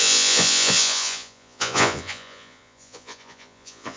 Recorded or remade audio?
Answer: remade